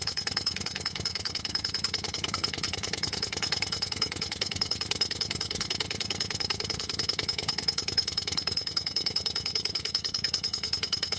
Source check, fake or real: fake